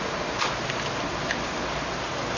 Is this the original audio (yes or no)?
yes